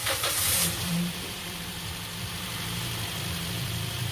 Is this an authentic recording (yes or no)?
no